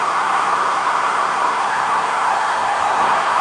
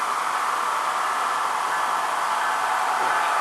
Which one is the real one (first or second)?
second